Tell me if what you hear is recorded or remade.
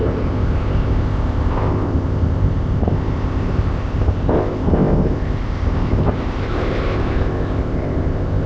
remade